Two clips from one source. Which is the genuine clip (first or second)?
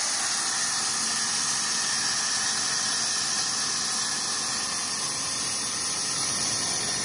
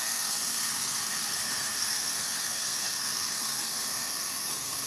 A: first